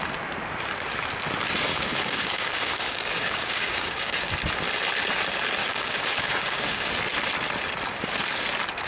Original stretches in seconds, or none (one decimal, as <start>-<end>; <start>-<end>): 0.0-1.7; 4.3-5.6; 6.9-8.9